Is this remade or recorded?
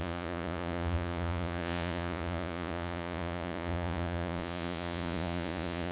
remade